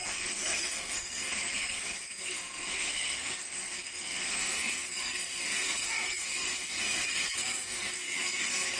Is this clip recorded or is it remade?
remade